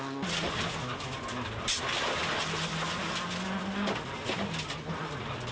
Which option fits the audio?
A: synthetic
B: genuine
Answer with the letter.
B